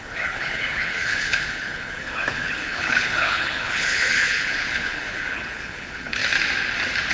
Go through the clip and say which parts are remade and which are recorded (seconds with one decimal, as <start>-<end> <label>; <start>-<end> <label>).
0.0-6.2 remade; 6.2-7.1 recorded